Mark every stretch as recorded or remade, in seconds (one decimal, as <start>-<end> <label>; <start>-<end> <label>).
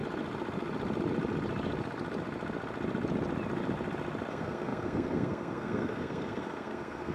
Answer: 0.0-4.3 recorded; 4.3-7.1 remade